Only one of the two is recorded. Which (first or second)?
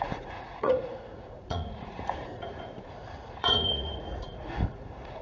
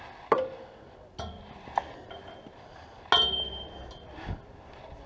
second